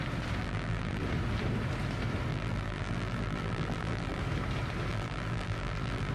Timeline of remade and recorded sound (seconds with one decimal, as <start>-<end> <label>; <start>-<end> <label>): 0.0-0.4 recorded; 0.4-1.0 remade; 1.0-2.3 recorded; 2.3-4.2 remade; 4.2-4.9 recorded; 4.9-6.1 remade